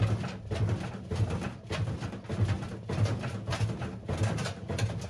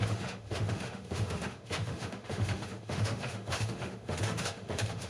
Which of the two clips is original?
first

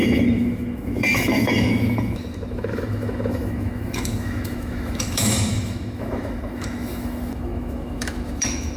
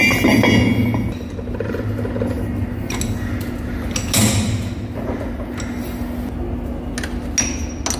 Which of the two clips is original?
second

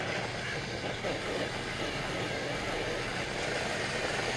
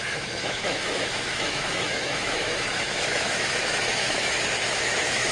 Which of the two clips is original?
first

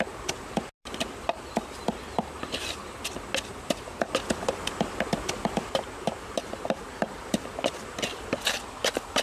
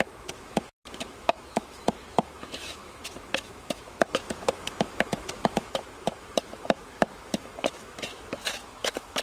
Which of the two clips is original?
first